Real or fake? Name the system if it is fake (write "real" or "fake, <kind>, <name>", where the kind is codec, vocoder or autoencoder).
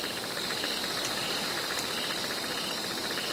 real